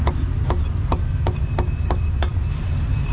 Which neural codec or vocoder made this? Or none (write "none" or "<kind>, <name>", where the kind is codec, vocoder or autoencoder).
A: none